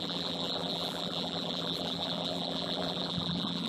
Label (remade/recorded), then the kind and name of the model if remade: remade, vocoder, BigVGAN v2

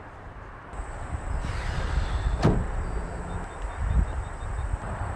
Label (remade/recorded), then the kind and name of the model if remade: recorded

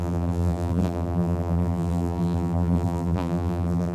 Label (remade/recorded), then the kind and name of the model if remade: remade, vocoder, BigVGAN v2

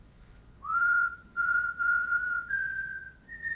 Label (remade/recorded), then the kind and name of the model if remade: remade, vocoder, Vocos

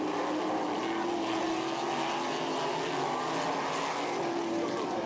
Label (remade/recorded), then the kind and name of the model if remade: recorded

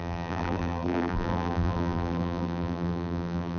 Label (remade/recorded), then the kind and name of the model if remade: remade, vocoder, BigVGAN v2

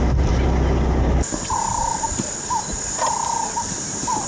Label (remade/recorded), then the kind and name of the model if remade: recorded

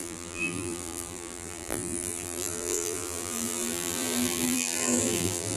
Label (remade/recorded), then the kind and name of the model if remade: remade, vocoder, BigVGAN v2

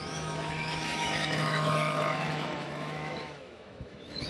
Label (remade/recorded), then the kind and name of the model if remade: remade, autoencoder, DAC-VAE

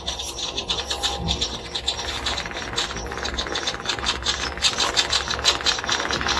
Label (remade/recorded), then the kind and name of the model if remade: recorded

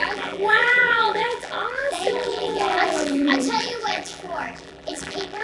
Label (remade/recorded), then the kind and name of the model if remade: remade, vocoder, BigVGAN v2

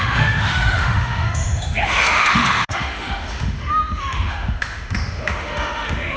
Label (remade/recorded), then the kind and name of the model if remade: remade, autoencoder, DAC-VAE